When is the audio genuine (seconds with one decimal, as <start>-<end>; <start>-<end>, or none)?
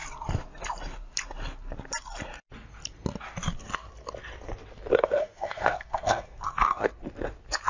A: 0.0-4.9; 6.9-7.7